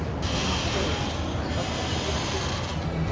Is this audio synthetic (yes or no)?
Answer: no